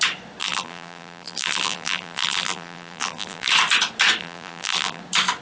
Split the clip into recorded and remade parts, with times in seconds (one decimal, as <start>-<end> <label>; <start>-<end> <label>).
0.0-0.4 recorded; 0.4-3.5 remade; 3.5-4.2 recorded; 4.2-5.0 remade; 5.0-5.4 recorded